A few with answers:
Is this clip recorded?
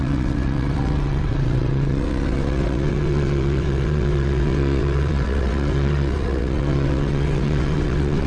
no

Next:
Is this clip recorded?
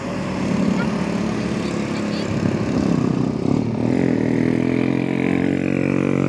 yes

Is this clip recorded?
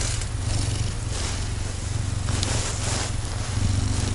yes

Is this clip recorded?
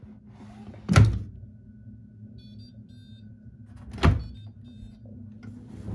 yes